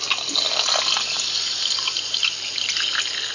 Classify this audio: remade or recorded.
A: recorded